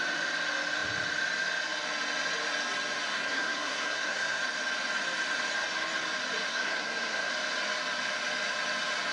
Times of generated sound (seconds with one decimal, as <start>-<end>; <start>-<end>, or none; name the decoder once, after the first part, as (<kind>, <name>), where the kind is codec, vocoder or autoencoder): 3.1-4.4 (codec, SNAC); 6.5-7.3